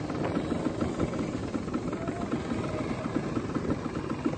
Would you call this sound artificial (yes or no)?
no